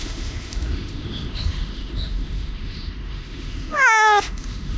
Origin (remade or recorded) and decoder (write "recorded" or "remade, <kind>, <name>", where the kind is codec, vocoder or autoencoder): remade, autoencoder, DAC-VAE